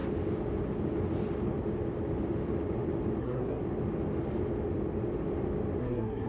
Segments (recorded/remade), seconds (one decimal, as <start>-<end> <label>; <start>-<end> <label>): 0.0-3.2 recorded; 3.2-3.6 remade; 3.6-5.8 recorded; 5.8-6.3 remade